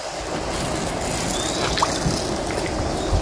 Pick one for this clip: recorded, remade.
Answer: recorded